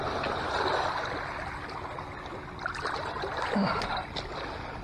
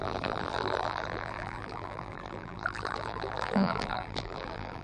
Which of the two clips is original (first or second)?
first